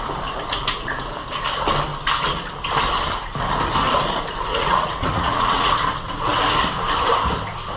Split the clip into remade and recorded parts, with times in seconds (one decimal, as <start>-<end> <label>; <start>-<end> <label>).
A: 0.0-4.5 recorded; 4.5-5.7 remade; 5.7-7.8 recorded